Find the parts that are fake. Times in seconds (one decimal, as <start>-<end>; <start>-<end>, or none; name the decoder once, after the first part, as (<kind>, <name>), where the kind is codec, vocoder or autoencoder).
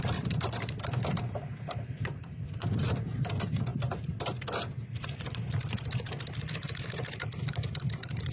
0.0-8.3 (vocoder, BigVGAN v2)